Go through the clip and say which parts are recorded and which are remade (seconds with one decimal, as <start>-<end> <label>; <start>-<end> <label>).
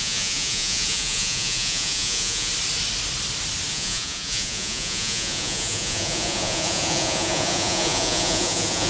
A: 0.0-2.5 remade; 2.5-3.7 recorded; 3.7-8.9 remade